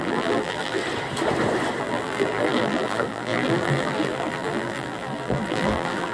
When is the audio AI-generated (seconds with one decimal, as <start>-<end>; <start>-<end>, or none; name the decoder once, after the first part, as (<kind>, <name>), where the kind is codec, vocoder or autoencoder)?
0.0-0.8 (vocoder, BigVGAN v2); 1.8-6.1